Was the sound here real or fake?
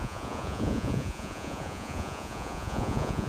fake